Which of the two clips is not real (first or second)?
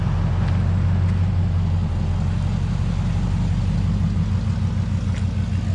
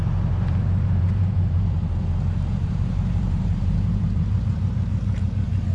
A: second